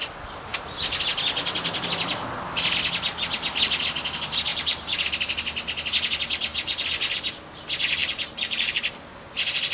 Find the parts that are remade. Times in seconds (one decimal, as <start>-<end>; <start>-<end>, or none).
4.5-5.0; 8.0-8.8